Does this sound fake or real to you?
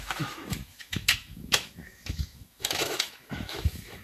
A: fake